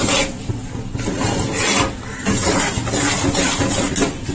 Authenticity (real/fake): real